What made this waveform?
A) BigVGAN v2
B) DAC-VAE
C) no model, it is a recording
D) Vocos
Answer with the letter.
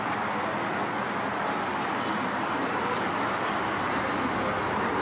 C